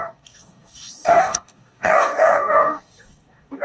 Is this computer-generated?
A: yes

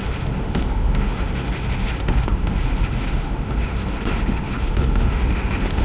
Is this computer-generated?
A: yes